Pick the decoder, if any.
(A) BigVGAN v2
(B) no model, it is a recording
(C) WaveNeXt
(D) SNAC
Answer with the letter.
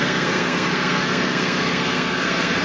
D